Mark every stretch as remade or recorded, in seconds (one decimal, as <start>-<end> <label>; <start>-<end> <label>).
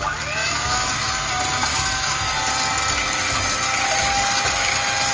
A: 0.0-0.4 recorded; 0.4-1.1 remade; 1.1-1.7 recorded; 1.7-2.3 remade; 2.3-5.1 recorded